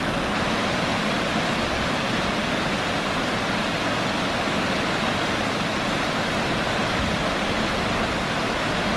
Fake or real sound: real